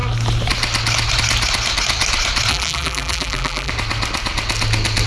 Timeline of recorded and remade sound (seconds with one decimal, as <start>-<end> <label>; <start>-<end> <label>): 0.0-2.5 recorded; 2.5-3.7 remade; 3.7-5.1 recorded